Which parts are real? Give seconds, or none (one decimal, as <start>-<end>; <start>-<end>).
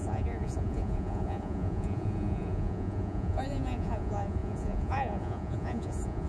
none